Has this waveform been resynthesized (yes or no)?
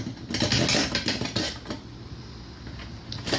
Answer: no